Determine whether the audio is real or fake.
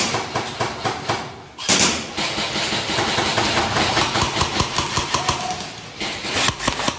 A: real